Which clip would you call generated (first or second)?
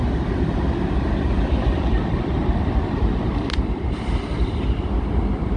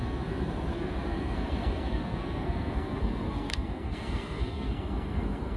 second